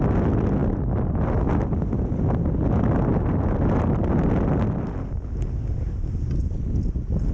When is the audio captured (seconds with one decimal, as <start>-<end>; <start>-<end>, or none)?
0.0-7.3